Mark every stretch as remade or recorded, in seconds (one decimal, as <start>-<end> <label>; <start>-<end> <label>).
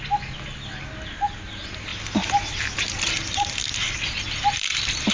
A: 0.0-5.1 recorded